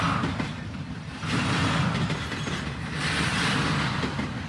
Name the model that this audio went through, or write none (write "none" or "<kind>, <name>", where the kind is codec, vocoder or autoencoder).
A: none